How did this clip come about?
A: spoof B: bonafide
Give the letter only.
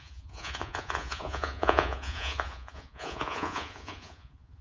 A